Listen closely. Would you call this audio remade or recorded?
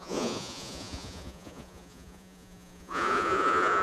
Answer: remade